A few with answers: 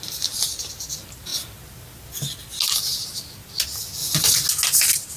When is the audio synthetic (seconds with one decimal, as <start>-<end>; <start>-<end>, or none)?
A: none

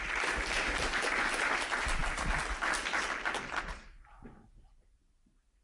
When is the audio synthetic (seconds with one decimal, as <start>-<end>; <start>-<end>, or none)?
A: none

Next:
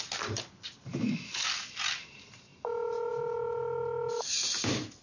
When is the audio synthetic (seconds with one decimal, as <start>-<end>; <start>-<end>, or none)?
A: 0.9-1.5

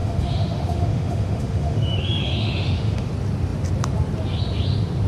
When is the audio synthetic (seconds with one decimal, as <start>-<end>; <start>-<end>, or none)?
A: 0.0-3.1